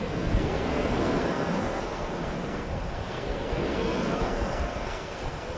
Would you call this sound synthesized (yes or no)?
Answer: yes